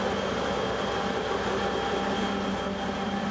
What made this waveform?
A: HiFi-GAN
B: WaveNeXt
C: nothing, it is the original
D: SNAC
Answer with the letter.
C